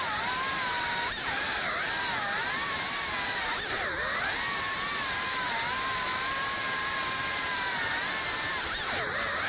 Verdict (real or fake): real